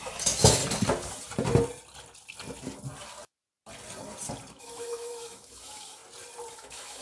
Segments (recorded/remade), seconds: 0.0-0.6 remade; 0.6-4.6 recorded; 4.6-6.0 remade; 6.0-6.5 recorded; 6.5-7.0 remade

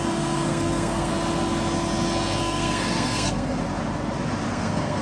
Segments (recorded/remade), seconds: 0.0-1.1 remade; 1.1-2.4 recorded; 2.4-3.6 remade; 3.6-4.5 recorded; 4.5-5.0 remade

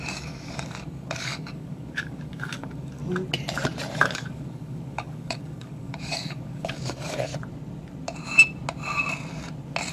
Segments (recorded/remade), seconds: 0.0-3.0 remade; 3.0-4.0 recorded; 4.0-7.3 remade; 7.3-9.9 recorded

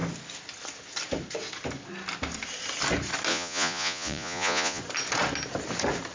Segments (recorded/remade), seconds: 0.0-3.3 recorded; 3.3-4.8 remade; 4.8-6.1 recorded